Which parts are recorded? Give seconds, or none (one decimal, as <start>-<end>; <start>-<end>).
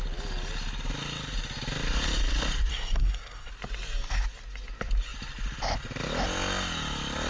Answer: 0.0-2.7; 3.5-7.3